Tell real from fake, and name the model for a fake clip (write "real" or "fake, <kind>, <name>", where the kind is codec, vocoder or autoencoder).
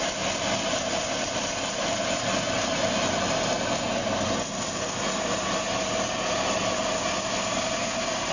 real